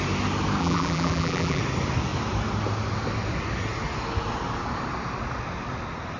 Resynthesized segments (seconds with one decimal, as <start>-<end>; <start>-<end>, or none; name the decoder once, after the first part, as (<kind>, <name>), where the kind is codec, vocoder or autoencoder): 0.6-1.6 (vocoder, BigVGAN v2)